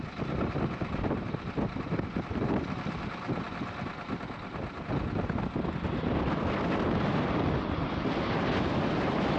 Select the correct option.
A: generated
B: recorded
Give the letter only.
B